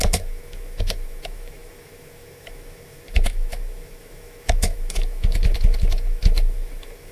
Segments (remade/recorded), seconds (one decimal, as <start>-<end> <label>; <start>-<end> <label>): 0.0-7.1 remade